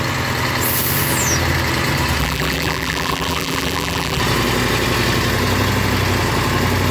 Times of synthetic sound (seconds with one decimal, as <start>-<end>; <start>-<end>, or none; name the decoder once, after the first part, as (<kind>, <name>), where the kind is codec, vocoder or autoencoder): 2.2-4.2 (vocoder, BigVGAN v2)